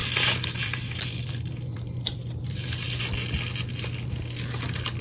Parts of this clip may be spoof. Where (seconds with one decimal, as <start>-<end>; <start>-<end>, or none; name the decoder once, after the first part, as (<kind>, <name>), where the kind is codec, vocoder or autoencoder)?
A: 0.0-3.0 (vocoder, BigVGAN v2)